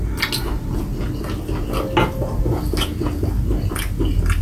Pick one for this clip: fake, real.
real